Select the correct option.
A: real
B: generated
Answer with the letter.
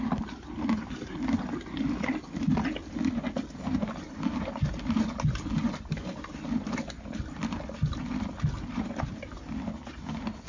A